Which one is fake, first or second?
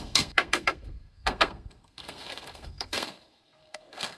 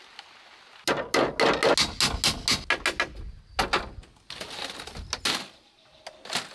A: first